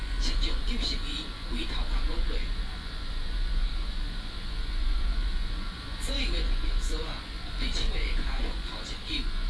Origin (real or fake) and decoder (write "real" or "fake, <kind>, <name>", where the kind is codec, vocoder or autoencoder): fake, vocoder, Vocos